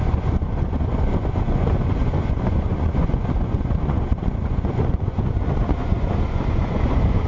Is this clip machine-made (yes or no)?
yes